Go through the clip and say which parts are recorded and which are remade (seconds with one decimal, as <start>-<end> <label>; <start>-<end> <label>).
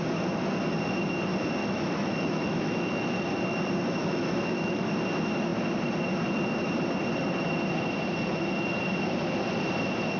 0.0-1.6 recorded; 1.6-3.2 remade; 3.2-4.0 recorded; 4.0-4.9 remade; 4.9-10.2 recorded